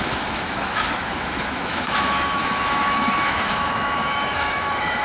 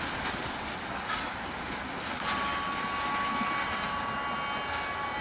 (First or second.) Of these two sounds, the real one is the second